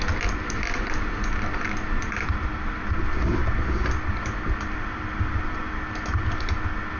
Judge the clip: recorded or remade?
recorded